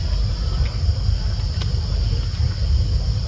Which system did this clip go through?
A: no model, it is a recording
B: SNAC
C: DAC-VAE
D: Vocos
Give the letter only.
A